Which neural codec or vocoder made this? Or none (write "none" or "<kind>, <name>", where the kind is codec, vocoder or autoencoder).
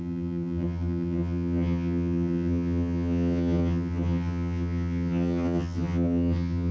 vocoder, HiFi-GAN